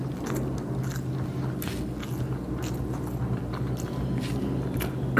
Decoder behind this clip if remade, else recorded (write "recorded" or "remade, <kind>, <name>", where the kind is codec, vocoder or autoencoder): recorded